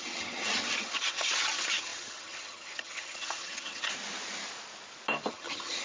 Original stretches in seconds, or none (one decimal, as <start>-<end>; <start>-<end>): 3.9-5.3